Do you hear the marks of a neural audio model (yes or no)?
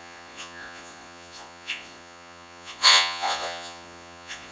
yes